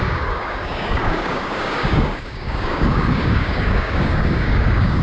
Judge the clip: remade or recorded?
remade